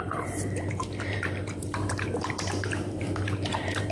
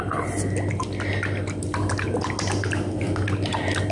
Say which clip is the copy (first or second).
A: first